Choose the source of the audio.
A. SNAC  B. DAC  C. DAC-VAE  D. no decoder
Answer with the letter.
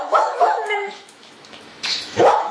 C